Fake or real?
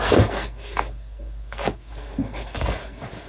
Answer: fake